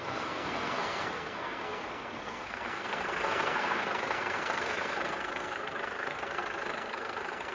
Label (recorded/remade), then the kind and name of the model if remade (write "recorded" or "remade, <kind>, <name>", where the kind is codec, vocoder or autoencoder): remade, codec, SNAC